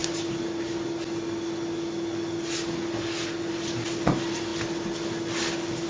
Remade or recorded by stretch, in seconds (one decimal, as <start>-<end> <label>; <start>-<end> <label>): 0.0-5.9 recorded